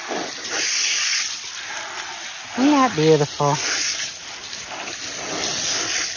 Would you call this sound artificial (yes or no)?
no